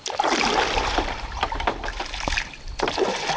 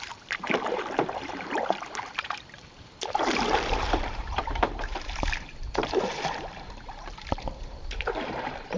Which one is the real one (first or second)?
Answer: first